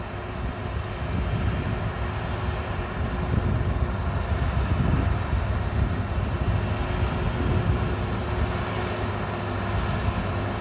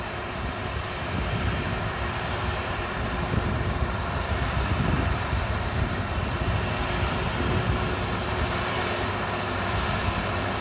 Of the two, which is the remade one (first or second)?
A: second